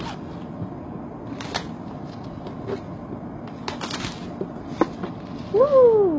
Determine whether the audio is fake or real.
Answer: real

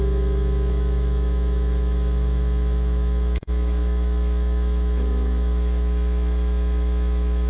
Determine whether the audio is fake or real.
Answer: fake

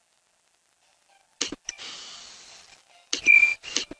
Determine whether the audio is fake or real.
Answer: real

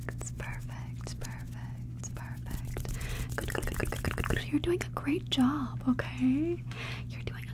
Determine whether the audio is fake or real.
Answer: real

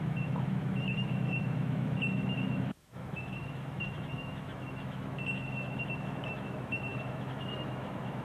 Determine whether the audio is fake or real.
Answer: fake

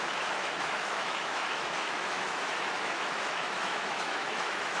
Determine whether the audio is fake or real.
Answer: fake